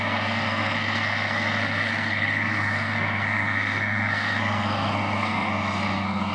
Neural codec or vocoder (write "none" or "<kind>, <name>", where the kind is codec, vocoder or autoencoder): codec, SNAC